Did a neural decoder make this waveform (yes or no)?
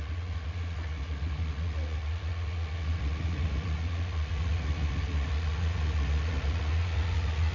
yes